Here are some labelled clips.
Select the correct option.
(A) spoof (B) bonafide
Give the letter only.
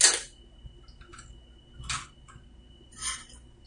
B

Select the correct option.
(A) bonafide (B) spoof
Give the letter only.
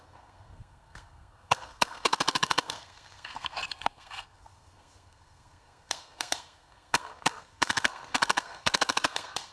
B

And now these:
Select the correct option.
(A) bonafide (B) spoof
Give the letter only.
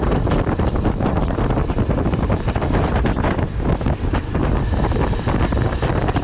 A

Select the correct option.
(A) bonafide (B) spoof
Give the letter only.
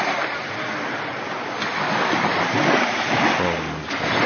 A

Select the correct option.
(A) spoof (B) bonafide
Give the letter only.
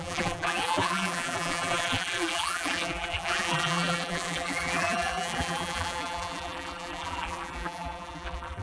A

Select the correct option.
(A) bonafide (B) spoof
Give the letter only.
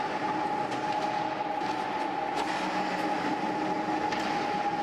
A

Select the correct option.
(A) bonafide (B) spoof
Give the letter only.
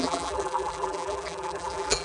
B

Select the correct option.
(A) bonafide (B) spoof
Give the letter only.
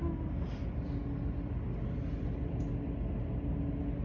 A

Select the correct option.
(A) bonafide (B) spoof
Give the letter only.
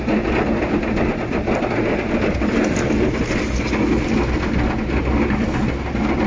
A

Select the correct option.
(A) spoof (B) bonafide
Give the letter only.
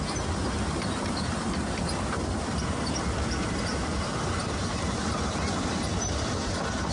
A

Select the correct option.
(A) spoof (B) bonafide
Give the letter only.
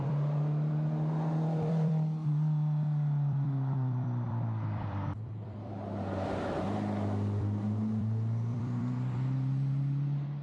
A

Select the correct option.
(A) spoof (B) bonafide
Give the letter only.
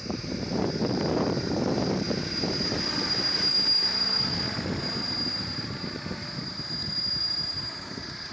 A